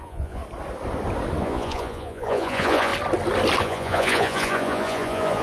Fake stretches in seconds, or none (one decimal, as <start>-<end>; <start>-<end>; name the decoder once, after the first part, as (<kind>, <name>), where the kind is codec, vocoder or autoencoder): 0.0-0.4 (vocoder, Vocos); 1.4-2.9; 3.6-5.4